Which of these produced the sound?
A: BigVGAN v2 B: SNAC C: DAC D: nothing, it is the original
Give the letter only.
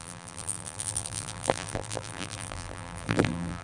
A